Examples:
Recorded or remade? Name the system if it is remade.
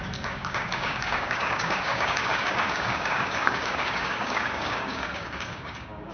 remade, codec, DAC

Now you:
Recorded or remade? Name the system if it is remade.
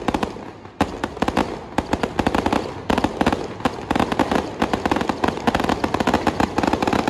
recorded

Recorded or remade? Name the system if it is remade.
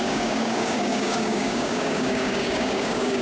remade, codec, DAC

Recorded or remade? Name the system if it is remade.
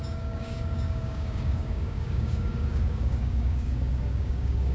remade, codec, DAC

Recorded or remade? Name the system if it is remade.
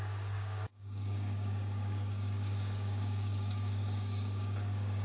remade, codec, DAC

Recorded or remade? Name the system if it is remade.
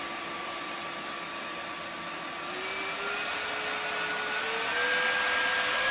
recorded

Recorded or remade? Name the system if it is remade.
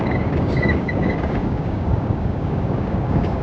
remade, codec, DAC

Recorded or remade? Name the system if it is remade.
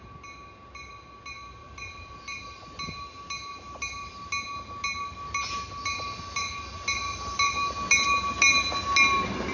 recorded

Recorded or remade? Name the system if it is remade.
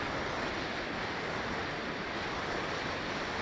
recorded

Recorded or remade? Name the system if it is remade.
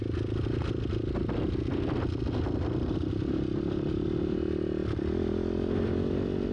recorded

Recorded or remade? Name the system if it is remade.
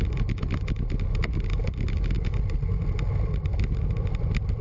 recorded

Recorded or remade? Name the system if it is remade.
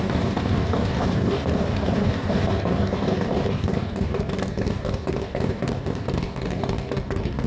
remade, codec, DAC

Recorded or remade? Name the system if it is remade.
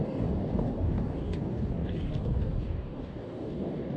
remade, codec, DAC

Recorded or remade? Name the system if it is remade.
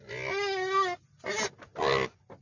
recorded